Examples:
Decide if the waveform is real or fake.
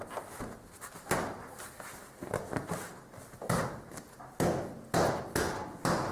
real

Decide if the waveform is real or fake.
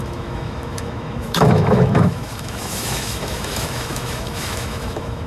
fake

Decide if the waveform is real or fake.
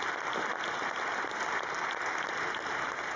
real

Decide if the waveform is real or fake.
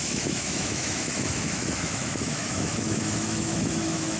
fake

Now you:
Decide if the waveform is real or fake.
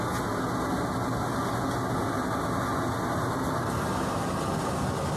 real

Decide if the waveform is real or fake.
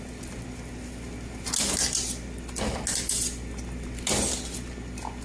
real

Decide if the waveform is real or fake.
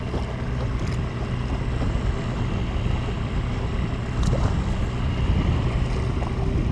real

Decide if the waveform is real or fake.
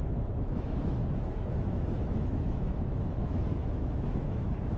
fake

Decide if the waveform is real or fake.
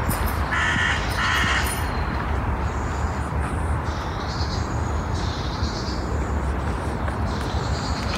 real